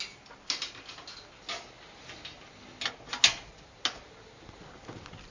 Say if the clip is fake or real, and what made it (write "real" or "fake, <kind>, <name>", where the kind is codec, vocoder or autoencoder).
real